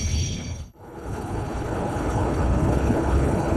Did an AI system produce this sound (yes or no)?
yes